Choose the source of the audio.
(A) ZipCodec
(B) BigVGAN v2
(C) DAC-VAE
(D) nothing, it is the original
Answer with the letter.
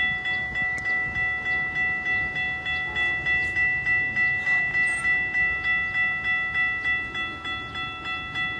D